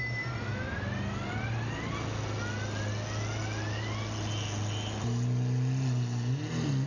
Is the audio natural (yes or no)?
yes